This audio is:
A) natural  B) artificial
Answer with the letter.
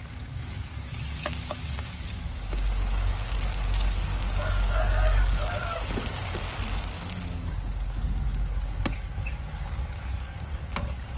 B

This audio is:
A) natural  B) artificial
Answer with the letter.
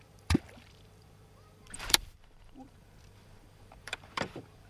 B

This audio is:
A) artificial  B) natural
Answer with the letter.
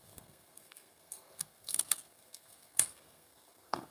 A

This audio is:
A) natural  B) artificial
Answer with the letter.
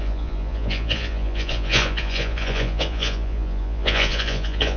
B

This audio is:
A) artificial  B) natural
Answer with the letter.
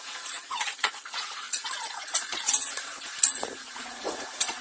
A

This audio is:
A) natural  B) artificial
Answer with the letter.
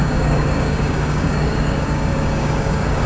B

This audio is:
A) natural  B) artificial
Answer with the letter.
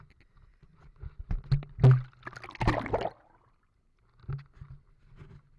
A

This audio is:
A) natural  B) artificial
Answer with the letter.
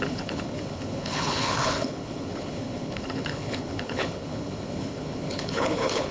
B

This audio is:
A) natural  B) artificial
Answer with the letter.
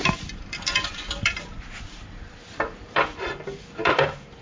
B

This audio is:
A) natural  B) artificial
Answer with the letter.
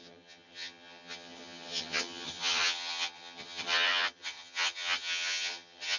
B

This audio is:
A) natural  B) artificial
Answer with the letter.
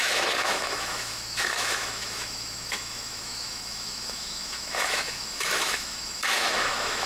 B